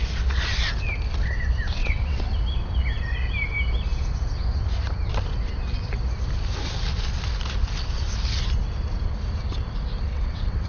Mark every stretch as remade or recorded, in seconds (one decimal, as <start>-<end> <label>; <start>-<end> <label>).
0.0-1.8 recorded; 1.8-2.4 remade; 2.4-10.1 recorded; 10.1-10.7 remade